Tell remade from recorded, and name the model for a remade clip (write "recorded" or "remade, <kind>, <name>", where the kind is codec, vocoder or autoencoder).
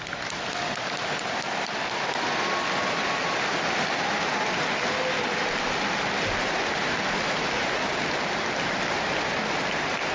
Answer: recorded